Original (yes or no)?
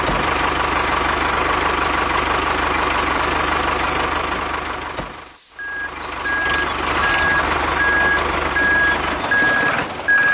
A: yes